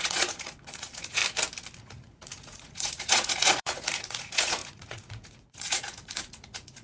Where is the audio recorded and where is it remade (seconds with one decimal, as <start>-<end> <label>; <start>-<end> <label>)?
0.0-1.2 remade; 1.2-1.8 recorded; 1.8-6.8 remade